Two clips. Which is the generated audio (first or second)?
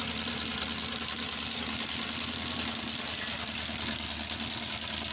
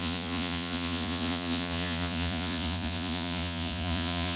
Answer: second